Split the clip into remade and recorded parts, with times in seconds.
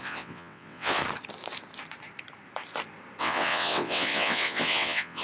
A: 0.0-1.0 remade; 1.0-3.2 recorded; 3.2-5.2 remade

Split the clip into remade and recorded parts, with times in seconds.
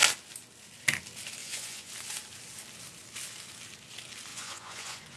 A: 0.0-1.4 recorded; 1.4-1.9 remade; 1.9-4.3 recorded; 4.3-5.2 remade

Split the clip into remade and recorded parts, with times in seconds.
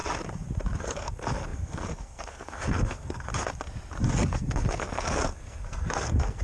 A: 0.0-0.8 recorded; 0.8-3.3 remade; 3.3-4.3 recorded; 4.3-6.4 remade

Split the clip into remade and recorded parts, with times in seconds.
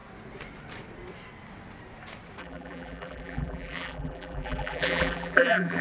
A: 0.0-2.4 recorded; 2.4-5.8 remade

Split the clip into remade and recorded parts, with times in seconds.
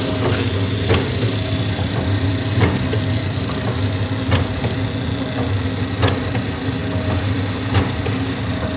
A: 0.0-8.8 recorded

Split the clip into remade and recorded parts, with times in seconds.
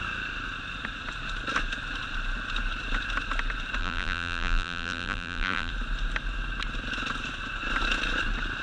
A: 0.0-3.8 recorded; 3.8-5.7 remade; 5.7-8.6 recorded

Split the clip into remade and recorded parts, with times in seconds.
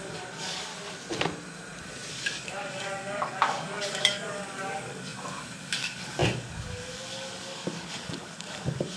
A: 0.0-0.7 remade; 0.7-2.1 recorded; 2.1-9.0 remade